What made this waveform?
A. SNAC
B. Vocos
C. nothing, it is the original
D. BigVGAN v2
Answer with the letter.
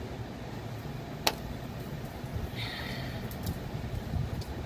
C